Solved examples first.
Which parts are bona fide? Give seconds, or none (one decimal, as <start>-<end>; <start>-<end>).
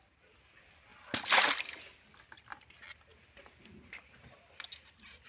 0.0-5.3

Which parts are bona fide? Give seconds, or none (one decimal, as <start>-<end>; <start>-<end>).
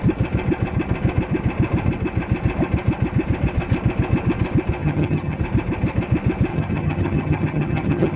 0.0-4.8; 5.4-6.5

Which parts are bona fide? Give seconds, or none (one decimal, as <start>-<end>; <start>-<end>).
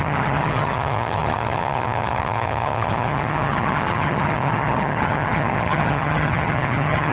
none